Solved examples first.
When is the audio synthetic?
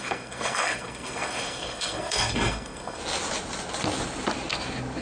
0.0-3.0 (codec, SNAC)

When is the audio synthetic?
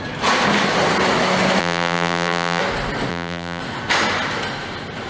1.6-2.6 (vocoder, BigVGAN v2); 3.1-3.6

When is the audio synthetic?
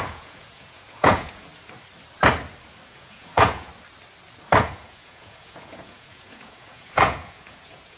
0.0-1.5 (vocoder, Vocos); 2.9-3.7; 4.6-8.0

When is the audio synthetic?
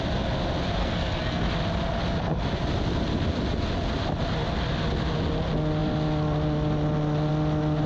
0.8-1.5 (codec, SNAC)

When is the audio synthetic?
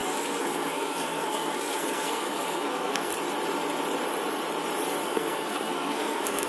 0.0-3.1 (codec, SNAC); 5.0-6.5